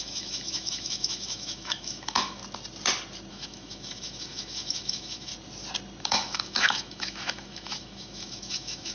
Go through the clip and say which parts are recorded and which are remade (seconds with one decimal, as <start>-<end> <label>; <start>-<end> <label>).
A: 0.0-2.4 remade; 2.4-3.3 recorded; 3.3-5.3 remade; 5.3-6.0 recorded; 6.0-8.9 remade